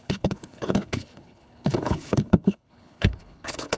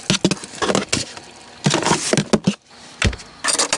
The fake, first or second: first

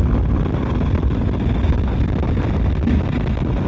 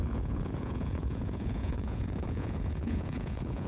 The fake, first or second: second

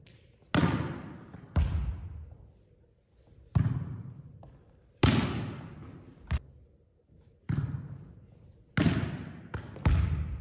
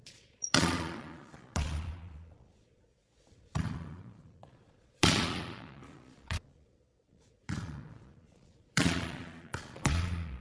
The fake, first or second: second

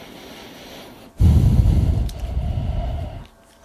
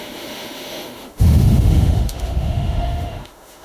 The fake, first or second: second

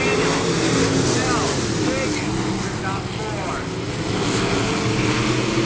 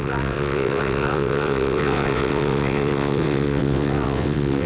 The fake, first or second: second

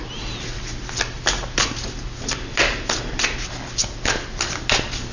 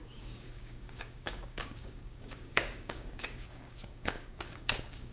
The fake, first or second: second